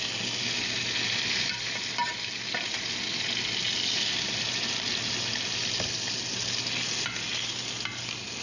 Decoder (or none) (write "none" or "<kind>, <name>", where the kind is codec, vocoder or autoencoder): none